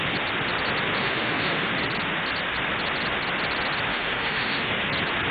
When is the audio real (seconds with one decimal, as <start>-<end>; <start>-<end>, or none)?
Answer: 0.0-1.0; 1.7-3.9; 4.7-5.3